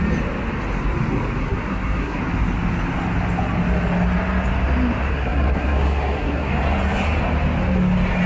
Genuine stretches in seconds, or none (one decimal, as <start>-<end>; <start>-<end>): 0.0-1.4; 2.2-5.1; 6.5-8.3